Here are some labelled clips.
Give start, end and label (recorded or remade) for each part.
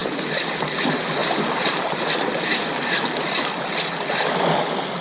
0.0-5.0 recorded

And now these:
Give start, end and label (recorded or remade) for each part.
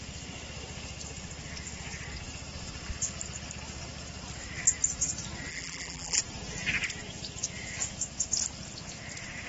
0.0-5.5 recorded; 5.5-6.2 remade; 6.2-9.5 recorded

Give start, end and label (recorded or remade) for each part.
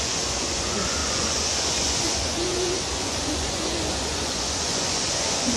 0.0-5.6 remade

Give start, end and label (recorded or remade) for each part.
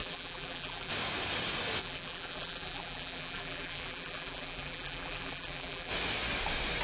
0.0-0.9 remade; 0.9-1.8 recorded; 1.8-5.9 remade; 5.9-6.8 recorded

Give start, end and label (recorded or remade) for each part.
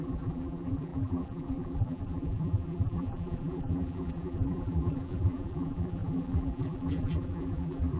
0.0-8.0 remade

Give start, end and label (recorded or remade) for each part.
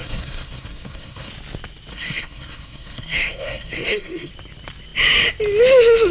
0.0-1.3 remade; 1.3-1.9 recorded; 1.9-4.3 remade; 4.3-6.1 recorded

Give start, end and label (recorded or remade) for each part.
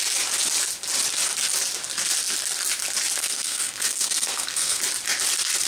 0.0-3.2 recorded; 3.2-4.8 remade; 4.8-5.7 recorded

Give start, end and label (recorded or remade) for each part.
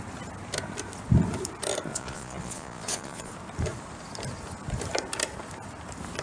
0.0-1.9 recorded; 1.9-3.3 remade; 3.3-6.2 recorded